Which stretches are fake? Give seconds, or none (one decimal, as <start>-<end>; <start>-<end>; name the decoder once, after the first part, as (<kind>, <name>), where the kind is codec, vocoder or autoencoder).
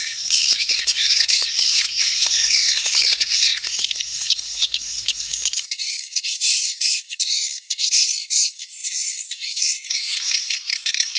0.0-11.2 (codec, SNAC)